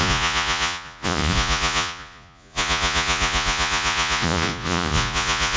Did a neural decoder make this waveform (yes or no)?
yes